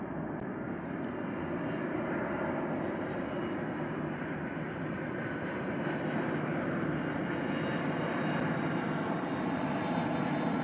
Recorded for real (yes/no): yes